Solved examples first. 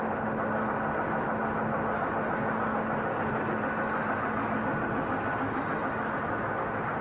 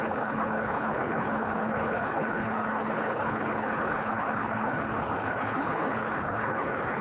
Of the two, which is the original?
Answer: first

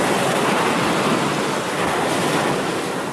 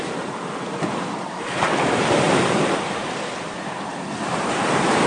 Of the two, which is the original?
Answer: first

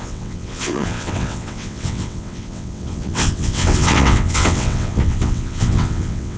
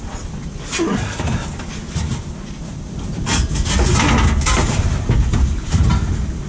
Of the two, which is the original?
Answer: second